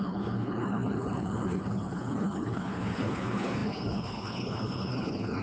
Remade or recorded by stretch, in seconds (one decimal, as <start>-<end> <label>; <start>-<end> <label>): 0.0-5.4 remade